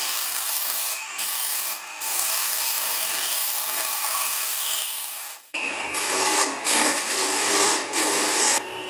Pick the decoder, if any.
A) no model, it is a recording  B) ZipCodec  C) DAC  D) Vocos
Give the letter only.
C